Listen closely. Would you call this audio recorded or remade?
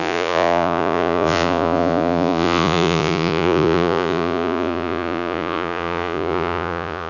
remade